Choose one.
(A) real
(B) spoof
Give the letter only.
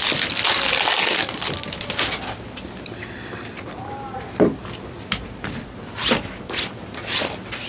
A